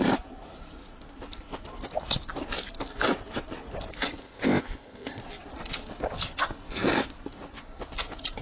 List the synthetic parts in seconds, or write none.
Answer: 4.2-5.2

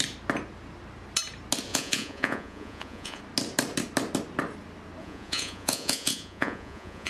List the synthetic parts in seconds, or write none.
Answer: 1.7-3.2; 5.0-7.1

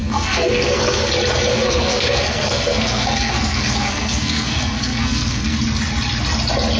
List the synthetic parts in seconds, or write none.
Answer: 0.0-1.1; 1.5-5.6

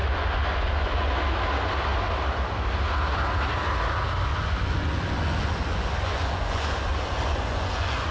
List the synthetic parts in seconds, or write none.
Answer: 0.0-1.2; 4.3-8.1

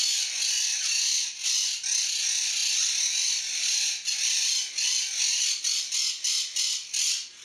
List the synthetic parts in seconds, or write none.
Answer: none

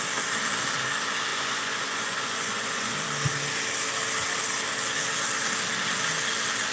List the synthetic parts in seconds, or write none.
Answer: 1.3-2.9

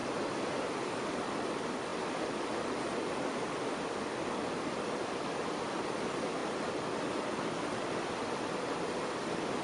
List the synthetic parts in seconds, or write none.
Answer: none